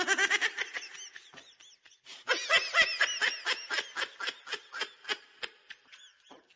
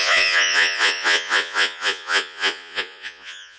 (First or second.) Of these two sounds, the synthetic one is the second